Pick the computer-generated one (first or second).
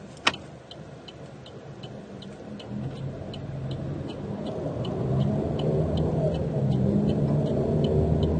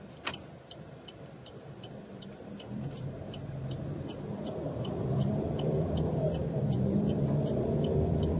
second